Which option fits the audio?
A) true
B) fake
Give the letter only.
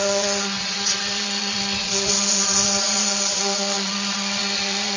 B